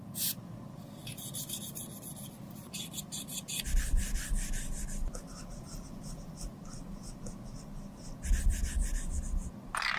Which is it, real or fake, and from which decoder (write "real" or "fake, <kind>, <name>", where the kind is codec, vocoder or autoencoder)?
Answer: real